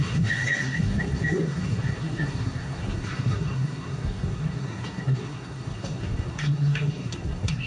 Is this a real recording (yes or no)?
no